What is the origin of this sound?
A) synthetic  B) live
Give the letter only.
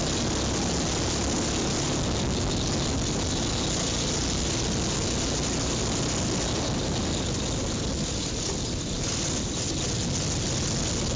B